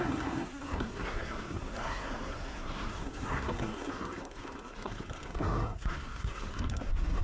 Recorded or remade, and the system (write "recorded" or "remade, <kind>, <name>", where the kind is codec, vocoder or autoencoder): remade, codec, SNAC